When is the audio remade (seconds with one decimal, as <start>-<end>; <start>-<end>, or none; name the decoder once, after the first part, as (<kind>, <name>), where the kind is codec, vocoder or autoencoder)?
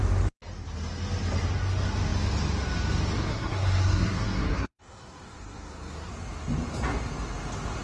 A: 3.3-6.1 (codec, SNAC)